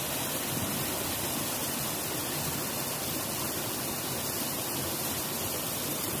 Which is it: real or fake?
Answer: real